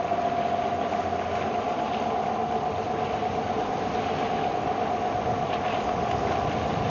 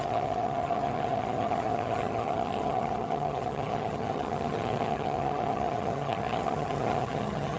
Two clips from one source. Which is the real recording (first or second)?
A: first